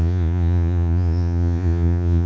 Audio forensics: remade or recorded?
remade